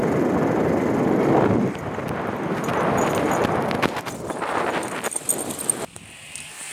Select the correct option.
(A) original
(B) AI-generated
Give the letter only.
A